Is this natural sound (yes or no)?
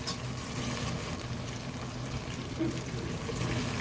yes